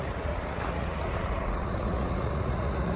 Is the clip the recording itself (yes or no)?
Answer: no